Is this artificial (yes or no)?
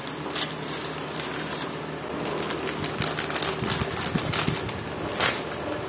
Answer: no